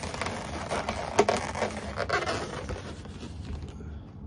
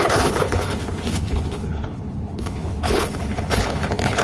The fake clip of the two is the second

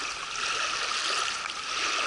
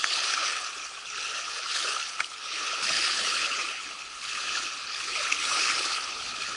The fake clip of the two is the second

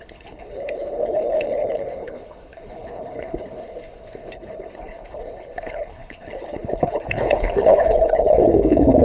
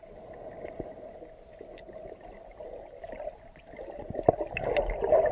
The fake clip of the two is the first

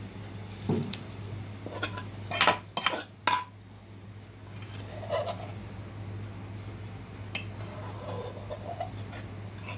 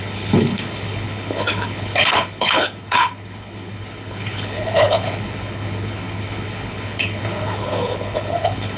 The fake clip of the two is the second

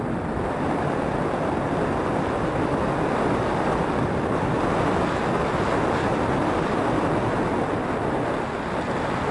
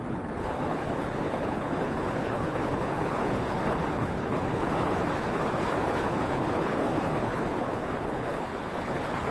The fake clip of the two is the second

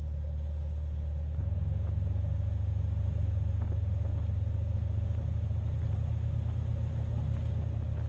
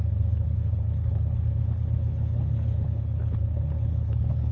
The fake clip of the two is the second